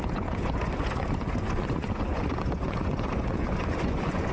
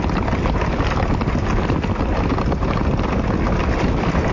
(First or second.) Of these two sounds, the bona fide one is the second